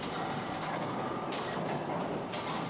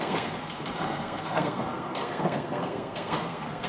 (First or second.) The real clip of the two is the first